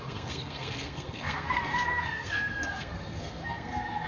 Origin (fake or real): fake